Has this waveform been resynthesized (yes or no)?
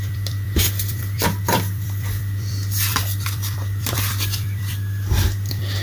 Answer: yes